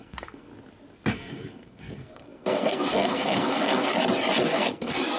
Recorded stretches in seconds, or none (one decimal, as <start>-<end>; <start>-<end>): 0.5-1.1; 3.9-4.4